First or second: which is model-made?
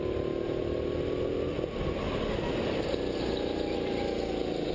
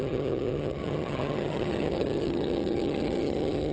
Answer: second